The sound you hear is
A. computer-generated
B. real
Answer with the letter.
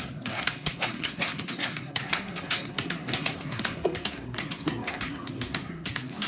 A